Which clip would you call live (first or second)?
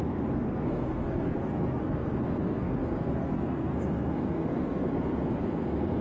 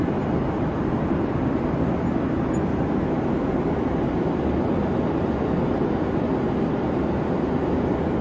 second